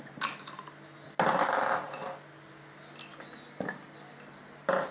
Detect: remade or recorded recorded